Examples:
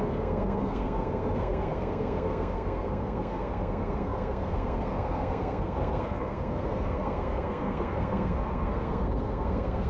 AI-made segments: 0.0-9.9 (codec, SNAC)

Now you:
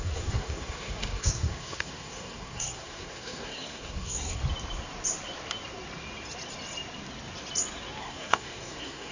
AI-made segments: 0.0-4.4 (codec, SNAC); 8.0-9.1

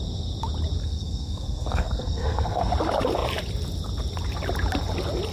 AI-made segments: 0.8-2.7 (codec, SNAC)

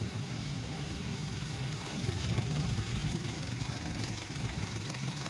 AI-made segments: 0.0-5.3 (codec, SNAC)

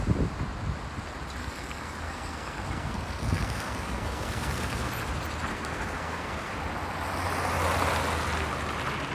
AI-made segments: 1.4-4.9 (codec, SNAC); 5.5-6.5

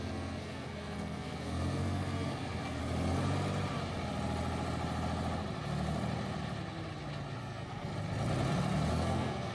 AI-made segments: 0.0-2.8 (codec, SNAC); 7.4-7.9; 8.9-9.5

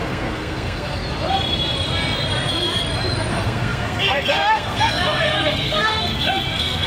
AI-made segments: 0.0-1.0 (codec, SNAC); 3.3-6.9

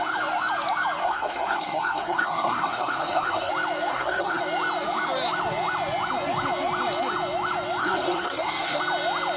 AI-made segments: 1.0-3.5 (codec, SNAC); 3.9-4.4; 7.8-8.8